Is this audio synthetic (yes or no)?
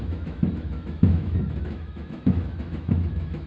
yes